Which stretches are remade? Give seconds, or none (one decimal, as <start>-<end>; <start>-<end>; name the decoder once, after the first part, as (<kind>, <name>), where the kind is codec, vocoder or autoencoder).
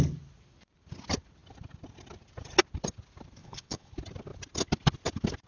3.4-3.9 (vocoder, Vocos)